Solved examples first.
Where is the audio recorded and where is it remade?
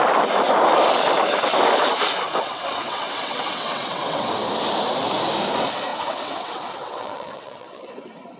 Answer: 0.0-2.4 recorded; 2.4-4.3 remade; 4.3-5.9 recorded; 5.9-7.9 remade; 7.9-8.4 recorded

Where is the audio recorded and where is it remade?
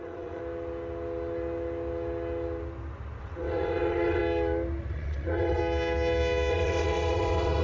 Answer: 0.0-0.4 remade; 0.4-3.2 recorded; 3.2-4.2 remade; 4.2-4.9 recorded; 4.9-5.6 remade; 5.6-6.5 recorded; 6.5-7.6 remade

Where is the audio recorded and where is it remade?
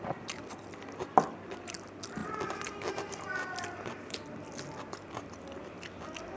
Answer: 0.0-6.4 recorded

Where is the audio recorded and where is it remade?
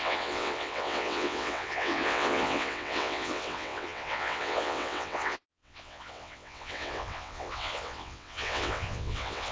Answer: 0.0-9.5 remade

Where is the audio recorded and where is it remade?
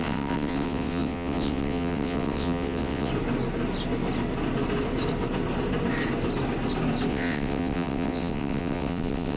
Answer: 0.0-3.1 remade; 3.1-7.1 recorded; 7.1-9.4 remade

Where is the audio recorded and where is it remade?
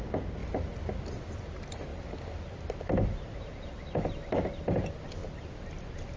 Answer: 0.0-6.2 recorded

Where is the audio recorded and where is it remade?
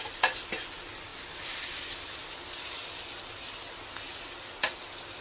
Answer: 0.0-5.2 recorded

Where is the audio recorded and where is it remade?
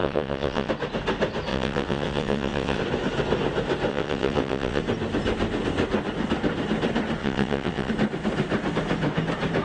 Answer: 0.0-0.7 remade; 0.7-1.5 recorded; 1.5-2.8 remade; 2.8-3.9 recorded; 3.9-4.8 remade; 4.8-7.2 recorded; 7.2-7.9 remade; 7.9-9.6 recorded